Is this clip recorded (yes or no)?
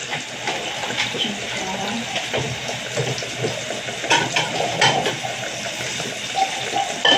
yes